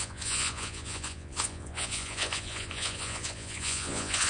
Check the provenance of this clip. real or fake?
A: fake